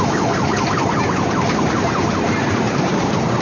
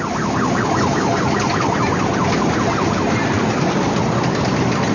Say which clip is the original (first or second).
second